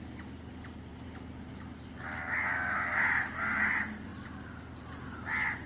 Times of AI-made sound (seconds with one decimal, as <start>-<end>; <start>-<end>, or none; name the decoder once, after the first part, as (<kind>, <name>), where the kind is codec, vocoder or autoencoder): none